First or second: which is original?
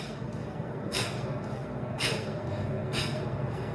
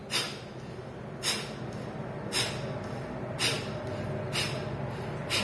second